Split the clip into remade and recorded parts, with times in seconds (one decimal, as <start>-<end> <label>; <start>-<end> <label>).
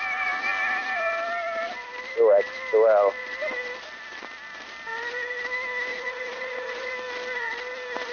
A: 0.0-5.9 recorded; 5.9-6.9 remade; 6.9-8.1 recorded